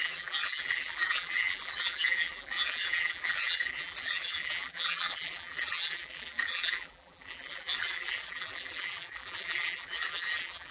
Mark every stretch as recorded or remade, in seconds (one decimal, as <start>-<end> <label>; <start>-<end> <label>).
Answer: 0.0-10.7 remade